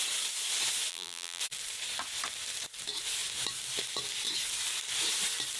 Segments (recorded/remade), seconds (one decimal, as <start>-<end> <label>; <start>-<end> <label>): 0.0-0.9 recorded; 0.9-1.4 remade; 1.4-5.6 recorded